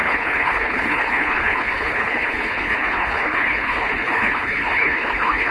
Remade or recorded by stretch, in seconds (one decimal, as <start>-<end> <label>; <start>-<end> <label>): 0.0-5.5 remade